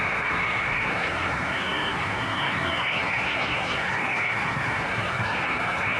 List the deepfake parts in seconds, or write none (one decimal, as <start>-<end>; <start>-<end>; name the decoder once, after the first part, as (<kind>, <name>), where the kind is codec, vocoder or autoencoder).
0.0-6.0 (codec, SNAC)